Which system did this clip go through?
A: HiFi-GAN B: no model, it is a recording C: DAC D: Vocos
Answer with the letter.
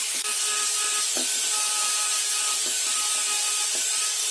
B